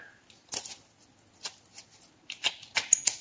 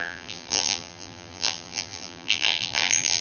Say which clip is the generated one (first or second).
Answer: second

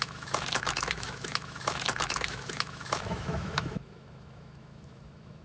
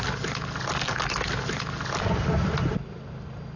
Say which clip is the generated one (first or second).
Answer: first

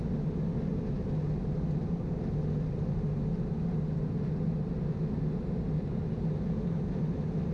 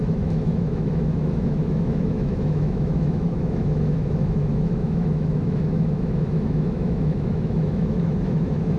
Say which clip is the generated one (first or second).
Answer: second